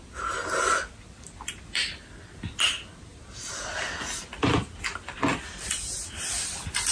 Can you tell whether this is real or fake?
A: real